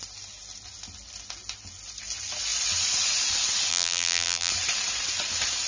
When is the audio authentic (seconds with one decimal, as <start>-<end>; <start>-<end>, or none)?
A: 0.0-3.7; 4.5-5.7